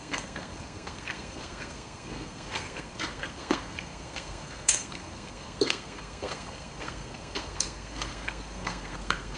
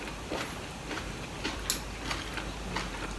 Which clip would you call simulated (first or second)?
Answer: first